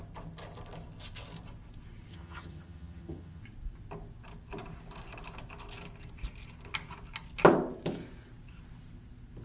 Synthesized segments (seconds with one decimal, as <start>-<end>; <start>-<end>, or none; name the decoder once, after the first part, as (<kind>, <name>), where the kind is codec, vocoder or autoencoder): 2.1-3.4 (vocoder, HiFi-GAN)